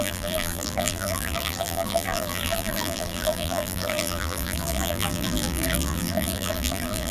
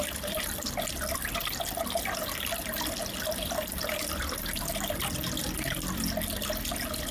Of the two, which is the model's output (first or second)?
first